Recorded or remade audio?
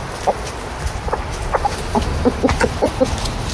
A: recorded